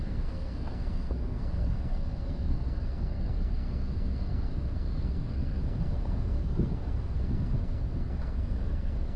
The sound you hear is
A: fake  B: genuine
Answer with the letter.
A